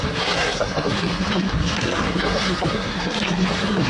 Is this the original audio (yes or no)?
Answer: no